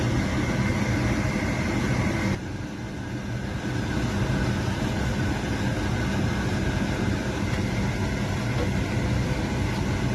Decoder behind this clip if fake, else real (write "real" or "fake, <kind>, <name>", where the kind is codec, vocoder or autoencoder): real